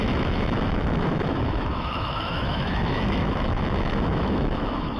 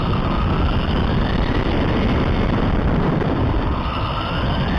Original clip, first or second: second